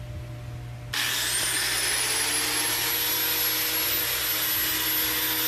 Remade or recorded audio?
recorded